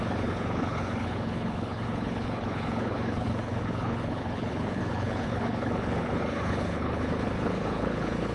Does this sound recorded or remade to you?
remade